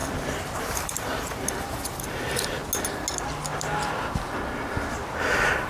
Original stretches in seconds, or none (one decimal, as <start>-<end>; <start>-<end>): 0.0-0.6; 2.6-5.2